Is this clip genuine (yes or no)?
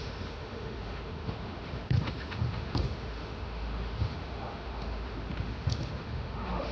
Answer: no